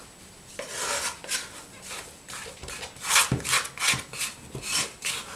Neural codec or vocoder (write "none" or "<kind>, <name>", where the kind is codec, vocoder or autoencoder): none